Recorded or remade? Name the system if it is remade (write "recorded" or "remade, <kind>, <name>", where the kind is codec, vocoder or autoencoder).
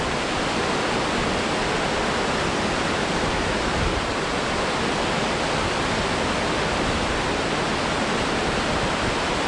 recorded